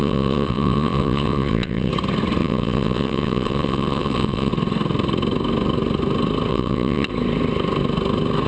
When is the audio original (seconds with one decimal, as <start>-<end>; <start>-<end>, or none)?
1.9-2.4; 4.5-6.5; 7.1-8.5